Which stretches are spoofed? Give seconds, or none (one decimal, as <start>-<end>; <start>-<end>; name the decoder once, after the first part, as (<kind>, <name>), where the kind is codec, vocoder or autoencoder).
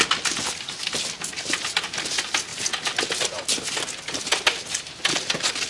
none